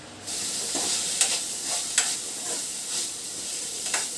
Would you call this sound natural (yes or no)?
yes